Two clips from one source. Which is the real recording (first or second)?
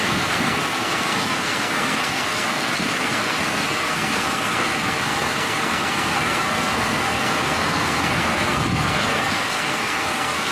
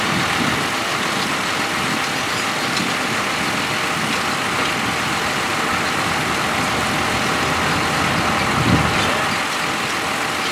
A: second